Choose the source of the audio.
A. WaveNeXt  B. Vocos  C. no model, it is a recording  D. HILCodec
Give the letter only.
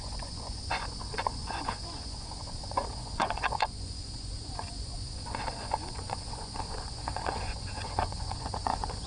B